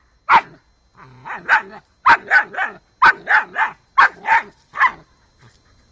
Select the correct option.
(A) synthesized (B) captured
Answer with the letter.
B